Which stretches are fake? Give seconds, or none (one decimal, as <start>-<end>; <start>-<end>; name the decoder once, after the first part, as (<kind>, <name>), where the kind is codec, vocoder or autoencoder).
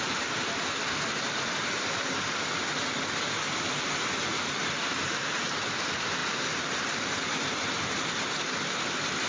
4.3-5.6 (vocoder, BigVGAN v2); 6.2-7.5